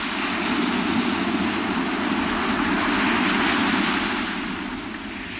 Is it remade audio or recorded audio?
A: recorded